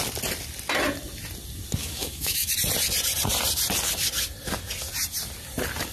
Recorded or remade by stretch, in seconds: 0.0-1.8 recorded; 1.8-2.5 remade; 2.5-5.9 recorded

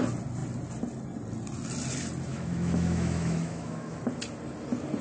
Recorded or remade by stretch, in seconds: 0.0-2.3 recorded; 2.3-4.0 remade; 4.0-5.0 recorded

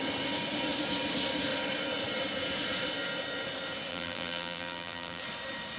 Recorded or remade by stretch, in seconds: 0.0-3.9 recorded; 3.9-5.2 remade; 5.2-5.8 recorded

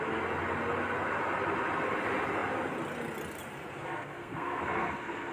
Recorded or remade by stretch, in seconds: 0.0-3.8 recorded; 3.8-5.3 remade

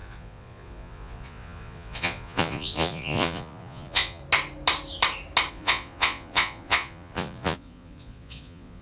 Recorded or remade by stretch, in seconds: 0.0-4.2 remade; 4.2-5.5 recorded; 5.5-8.8 remade

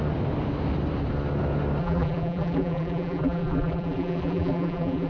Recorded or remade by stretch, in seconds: 0.0-1.8 recorded; 1.8-5.1 remade

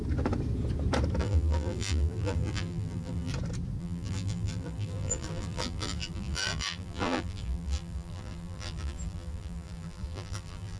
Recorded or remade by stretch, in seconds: 0.0-1.2 recorded; 1.2-3.3 remade; 3.3-3.8 recorded; 3.8-10.8 remade

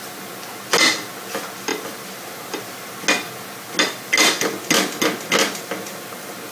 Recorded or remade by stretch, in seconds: 0.0-6.5 recorded